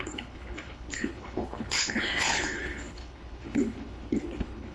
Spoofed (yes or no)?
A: yes